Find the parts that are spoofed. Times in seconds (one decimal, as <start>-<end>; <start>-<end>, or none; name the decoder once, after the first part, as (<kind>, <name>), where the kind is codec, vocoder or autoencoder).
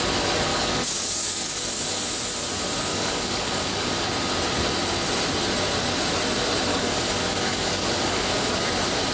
0.5-1.9 (codec, DAC); 2.9-4.1; 6.7-8.5